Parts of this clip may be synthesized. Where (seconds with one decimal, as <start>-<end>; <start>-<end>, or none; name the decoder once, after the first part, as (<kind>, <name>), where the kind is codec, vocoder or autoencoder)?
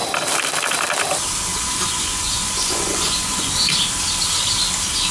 1.5-3.5 (vocoder, Vocos)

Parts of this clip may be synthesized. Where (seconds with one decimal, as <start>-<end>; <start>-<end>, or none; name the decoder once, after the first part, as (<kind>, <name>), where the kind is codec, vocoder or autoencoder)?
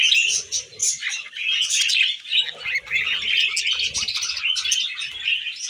none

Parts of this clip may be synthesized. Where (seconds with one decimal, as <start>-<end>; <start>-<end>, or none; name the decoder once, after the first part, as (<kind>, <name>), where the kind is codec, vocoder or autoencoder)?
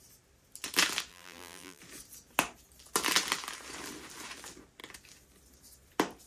1.1-1.8 (vocoder, BigVGAN v2)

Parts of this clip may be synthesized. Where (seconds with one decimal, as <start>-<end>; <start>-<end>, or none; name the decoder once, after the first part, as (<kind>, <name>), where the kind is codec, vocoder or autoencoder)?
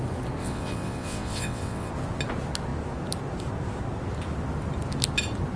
0.4-1.9 (vocoder, WaveNeXt)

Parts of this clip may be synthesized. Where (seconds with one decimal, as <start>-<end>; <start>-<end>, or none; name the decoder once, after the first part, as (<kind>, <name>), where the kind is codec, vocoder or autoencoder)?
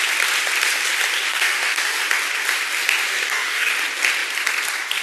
1.3-2.0 (codec, DAC); 3.1-3.7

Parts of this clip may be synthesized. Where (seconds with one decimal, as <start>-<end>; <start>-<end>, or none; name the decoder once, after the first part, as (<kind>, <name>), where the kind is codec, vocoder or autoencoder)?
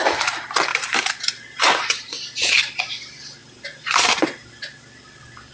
0.7-2.1 (vocoder, BigVGAN v2); 3.4-4.5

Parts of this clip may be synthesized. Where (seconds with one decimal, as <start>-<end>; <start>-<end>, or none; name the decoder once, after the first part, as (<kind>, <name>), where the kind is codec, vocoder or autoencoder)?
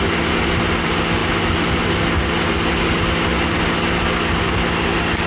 none